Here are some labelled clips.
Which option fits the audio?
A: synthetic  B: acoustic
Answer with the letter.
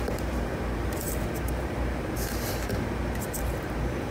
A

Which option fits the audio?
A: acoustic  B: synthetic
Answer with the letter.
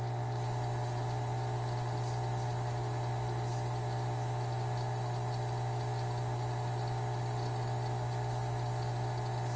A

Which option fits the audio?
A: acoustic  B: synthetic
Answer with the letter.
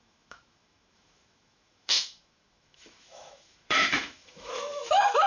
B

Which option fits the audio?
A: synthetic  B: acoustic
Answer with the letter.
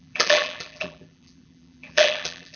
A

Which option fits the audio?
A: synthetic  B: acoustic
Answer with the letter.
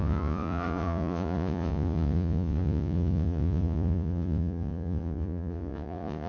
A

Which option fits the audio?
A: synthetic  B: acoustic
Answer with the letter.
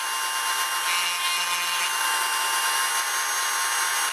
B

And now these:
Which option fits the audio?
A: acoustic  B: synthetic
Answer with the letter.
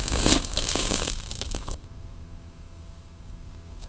B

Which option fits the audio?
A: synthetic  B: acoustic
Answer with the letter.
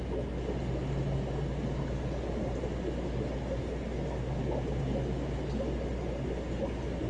B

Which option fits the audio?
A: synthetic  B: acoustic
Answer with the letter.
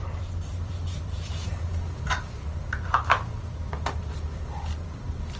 A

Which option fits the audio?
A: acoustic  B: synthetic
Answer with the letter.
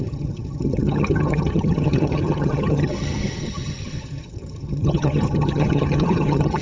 B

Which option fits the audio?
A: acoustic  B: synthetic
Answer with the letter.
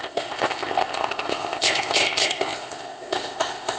B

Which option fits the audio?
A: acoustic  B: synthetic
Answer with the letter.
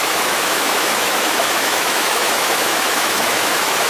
B